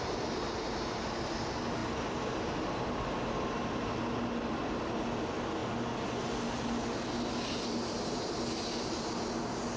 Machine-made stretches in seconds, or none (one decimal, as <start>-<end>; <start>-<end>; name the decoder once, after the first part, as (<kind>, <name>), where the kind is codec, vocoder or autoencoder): none